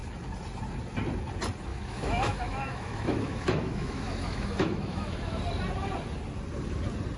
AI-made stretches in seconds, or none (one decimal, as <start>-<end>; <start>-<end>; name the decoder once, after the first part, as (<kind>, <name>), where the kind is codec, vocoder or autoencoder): 1.7-5.4 (autoencoder, DAC-VAE)